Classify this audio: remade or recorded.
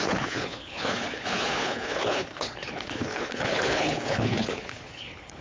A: remade